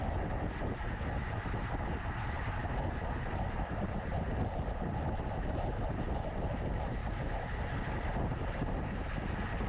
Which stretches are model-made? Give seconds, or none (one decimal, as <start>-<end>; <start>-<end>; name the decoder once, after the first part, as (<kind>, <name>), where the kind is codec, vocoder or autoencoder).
none